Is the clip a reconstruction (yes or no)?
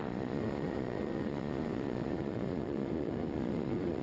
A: yes